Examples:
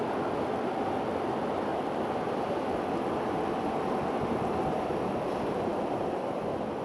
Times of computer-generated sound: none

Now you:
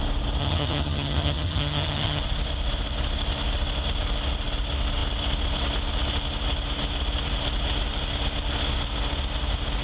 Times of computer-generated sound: 0.4-2.2 (vocoder, HiFi-GAN)

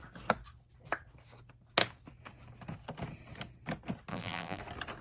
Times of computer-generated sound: 4.1-4.6 (vocoder, BigVGAN v2)

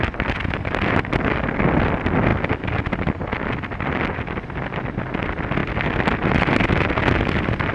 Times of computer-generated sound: none

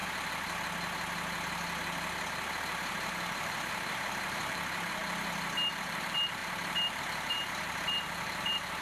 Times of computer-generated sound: 2.6-5.0 (vocoder, BigVGAN v2); 5.8-8.8

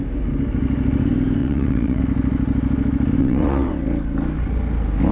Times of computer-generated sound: 1.4-2.0 (vocoder, WaveNeXt); 3.2-3.7

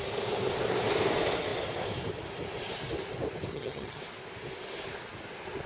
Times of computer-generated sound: 3.5-4.0 (vocoder, HiFi-GAN)